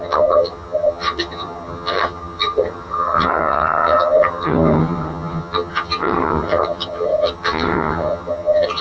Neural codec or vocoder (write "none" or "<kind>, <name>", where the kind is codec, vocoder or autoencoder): vocoder, HiFi-GAN